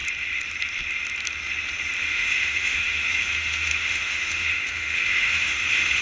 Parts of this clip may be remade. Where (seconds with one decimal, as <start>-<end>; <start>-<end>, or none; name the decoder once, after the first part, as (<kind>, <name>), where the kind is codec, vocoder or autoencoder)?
2.0-6.0 (autoencoder, DAC-VAE)